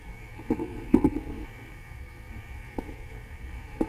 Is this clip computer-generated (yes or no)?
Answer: yes